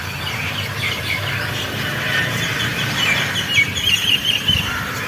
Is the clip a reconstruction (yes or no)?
yes